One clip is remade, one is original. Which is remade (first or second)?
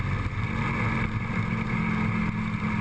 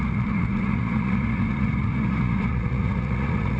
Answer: second